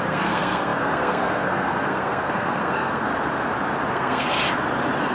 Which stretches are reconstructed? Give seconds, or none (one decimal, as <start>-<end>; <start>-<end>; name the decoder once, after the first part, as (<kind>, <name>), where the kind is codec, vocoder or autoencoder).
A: 0.0-3.1 (codec, SNAC); 3.9-4.4